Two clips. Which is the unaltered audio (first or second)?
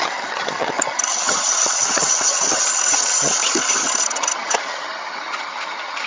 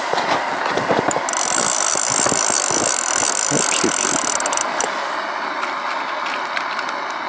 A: second